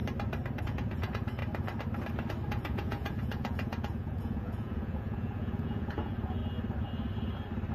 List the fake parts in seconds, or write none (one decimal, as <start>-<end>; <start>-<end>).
0.6-1.4; 2.5-6.4